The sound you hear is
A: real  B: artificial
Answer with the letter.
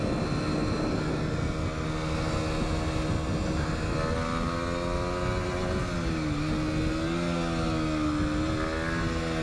A